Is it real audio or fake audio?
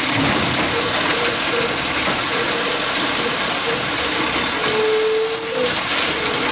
real